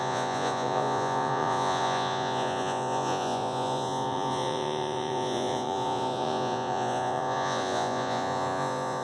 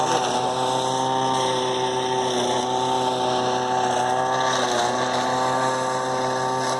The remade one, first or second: first